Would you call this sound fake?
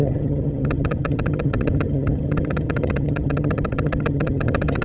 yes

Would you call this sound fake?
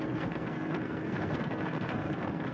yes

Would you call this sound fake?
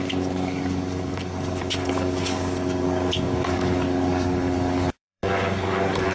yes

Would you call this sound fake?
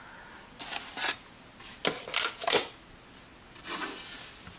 no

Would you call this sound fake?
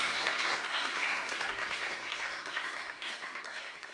yes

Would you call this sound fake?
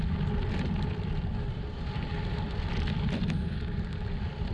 no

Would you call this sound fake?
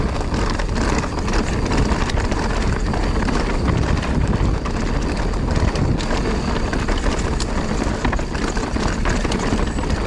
no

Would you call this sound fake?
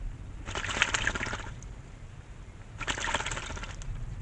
no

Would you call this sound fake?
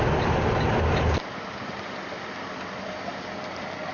no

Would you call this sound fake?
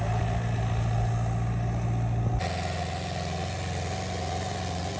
no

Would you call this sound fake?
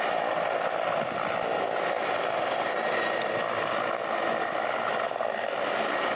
no